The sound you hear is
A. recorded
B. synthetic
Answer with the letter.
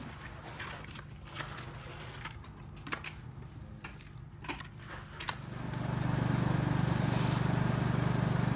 A